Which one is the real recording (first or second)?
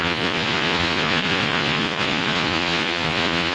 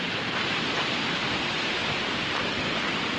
second